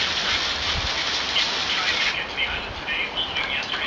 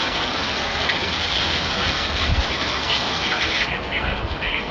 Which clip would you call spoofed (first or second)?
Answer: second